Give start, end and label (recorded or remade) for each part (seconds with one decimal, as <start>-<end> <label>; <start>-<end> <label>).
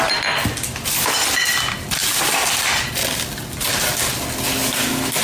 0.0-5.2 recorded